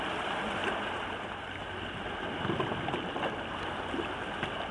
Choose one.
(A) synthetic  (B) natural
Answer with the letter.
B